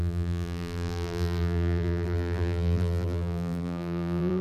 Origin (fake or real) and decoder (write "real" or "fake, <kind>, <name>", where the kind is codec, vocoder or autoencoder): fake, vocoder, BigVGAN v2